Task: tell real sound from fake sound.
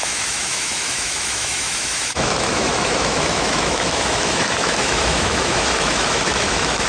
fake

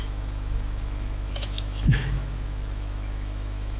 fake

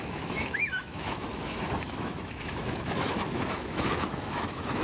fake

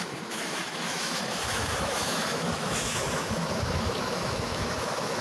fake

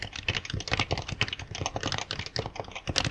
real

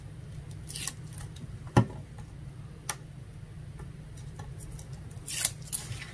real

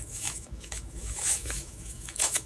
fake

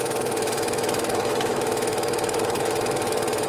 fake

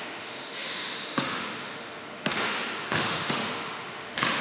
fake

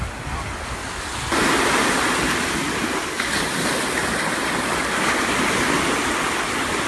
real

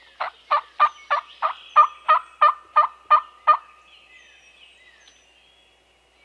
real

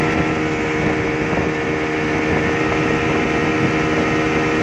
real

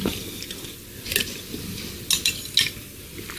real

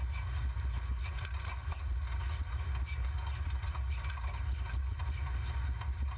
real